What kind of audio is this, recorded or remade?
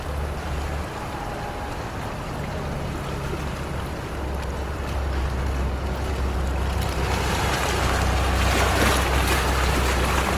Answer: recorded